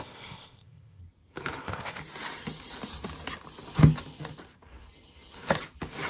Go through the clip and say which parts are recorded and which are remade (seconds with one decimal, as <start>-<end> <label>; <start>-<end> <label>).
0.0-1.0 remade; 1.0-1.6 recorded; 1.6-2.0 remade; 2.0-6.1 recorded